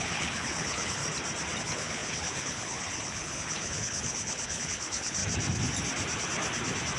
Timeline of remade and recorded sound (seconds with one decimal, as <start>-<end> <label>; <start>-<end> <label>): 0.0-1.0 remade; 1.0-1.6 recorded; 1.6-5.2 remade; 5.2-7.0 recorded